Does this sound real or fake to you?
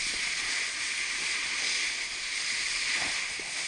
real